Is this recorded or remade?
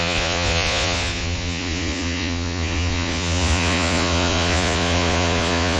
remade